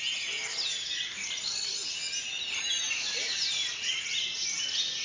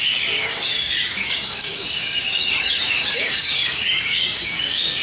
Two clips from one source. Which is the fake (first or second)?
second